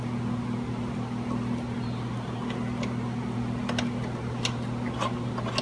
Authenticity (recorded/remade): recorded